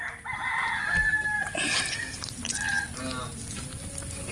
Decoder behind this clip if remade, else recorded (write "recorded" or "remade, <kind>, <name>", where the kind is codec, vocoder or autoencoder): recorded